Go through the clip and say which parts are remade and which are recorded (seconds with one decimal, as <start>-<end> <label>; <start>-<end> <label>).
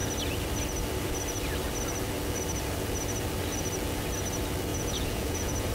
0.0-4.7 recorded; 4.7-5.7 remade